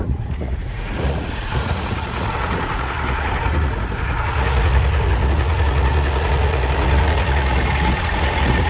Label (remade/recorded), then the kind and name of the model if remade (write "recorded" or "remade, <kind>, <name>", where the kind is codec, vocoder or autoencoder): remade, vocoder, Vocos